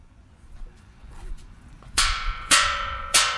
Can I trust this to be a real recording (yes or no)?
no